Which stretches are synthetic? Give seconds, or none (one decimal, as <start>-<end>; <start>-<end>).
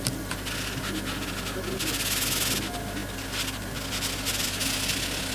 none